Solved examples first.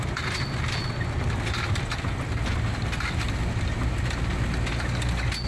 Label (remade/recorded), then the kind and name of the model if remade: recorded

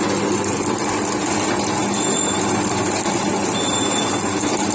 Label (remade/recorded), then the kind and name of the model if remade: recorded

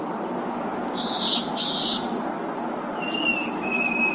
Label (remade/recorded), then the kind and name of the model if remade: recorded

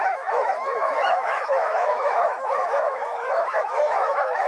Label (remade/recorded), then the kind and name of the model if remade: remade, autoencoder, DAC-VAE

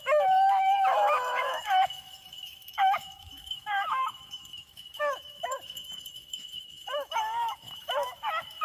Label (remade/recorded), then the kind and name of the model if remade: remade, autoencoder, DAC-VAE